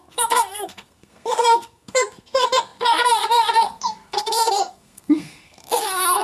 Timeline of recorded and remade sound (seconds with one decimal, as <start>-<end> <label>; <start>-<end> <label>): 0.0-6.2 remade